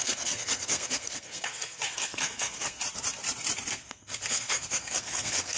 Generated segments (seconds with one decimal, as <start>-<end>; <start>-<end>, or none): 0.0-2.8; 3.7-5.6